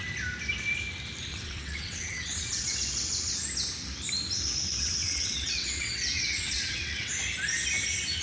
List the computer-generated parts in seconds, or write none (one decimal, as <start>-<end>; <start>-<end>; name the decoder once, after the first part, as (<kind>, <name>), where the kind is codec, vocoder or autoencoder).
1.3-2.8 (vocoder, WaveNeXt); 4.8-7.1